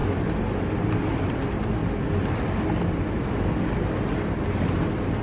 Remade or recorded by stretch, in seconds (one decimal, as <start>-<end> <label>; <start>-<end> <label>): 0.0-5.2 recorded